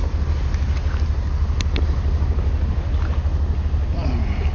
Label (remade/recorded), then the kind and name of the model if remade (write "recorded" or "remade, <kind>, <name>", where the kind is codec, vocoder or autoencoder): recorded